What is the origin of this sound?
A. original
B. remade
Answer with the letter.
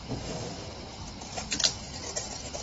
B